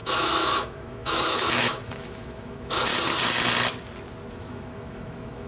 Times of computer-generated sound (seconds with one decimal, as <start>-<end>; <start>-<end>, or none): 0.0-2.9; 4.3-5.5

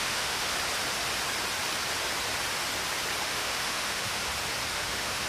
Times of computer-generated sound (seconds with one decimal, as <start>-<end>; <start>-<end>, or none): 0.0-0.5; 3.2-4.2; 4.7-5.3

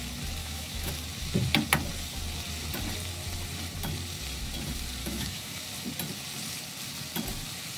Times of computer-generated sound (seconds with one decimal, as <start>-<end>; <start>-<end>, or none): 0.4-0.9; 5.0-5.6

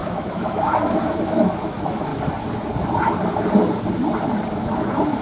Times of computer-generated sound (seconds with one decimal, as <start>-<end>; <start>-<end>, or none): 0.0-2.1; 4.5-5.2

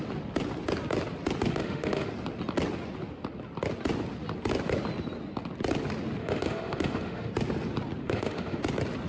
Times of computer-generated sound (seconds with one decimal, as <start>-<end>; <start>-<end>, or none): 1.5-2.1; 6.2-7.3; 8.0-8.6

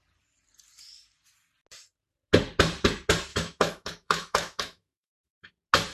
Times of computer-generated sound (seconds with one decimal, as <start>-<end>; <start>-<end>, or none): 3.3-5.5

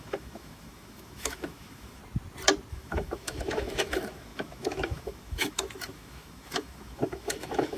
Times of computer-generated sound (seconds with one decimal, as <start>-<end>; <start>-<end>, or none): 0.0-2.0; 2.7-7.8